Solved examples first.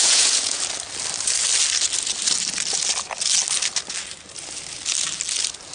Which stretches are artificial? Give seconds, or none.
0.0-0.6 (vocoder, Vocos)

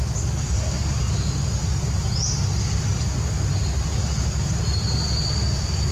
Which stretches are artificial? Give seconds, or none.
none